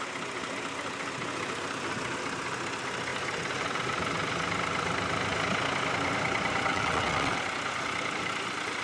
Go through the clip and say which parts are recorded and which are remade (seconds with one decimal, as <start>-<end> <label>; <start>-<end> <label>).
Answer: 0.0-6.7 recorded; 6.7-7.4 remade; 7.4-8.8 recorded